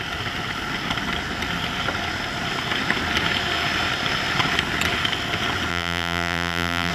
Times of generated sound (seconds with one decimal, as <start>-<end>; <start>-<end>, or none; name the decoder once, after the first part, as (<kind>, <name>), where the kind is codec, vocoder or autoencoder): 5.7-6.9 (vocoder, BigVGAN v2)